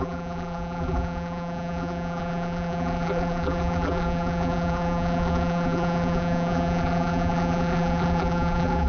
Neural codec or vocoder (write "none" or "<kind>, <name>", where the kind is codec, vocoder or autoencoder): vocoder, BigVGAN v2